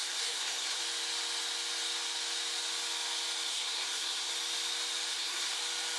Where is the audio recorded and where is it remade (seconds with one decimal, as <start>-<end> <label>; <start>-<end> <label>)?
0.0-0.8 remade; 0.8-3.5 recorded; 3.5-4.3 remade; 4.3-5.1 recorded; 5.1-5.6 remade; 5.6-6.0 recorded